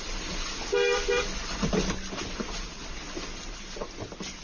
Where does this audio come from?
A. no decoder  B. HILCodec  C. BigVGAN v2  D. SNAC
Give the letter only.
A